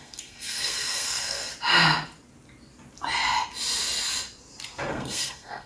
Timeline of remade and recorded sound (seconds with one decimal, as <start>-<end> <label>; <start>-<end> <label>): 0.0-1.5 remade; 1.5-4.9 recorded; 4.9-5.7 remade